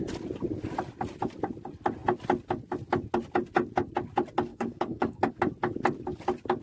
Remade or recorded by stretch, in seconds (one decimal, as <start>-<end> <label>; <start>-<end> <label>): 0.0-4.5 recorded; 4.5-5.3 remade; 5.3-6.6 recorded